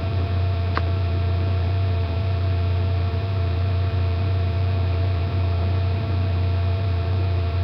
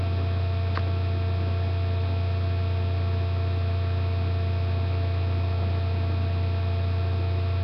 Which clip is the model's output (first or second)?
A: first